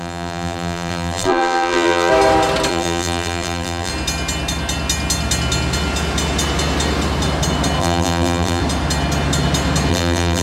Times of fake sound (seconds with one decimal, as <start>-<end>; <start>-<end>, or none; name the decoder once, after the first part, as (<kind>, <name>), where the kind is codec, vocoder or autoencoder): 0.0-2.1 (vocoder, BigVGAN v2); 2.7-3.9; 7.8-8.6; 9.9-10.4